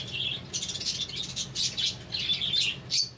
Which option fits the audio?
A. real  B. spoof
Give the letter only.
A